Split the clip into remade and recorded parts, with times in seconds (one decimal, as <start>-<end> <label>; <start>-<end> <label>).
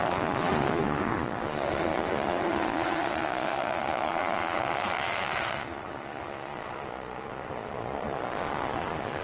0.0-9.2 remade